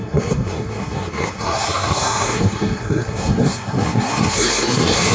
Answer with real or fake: fake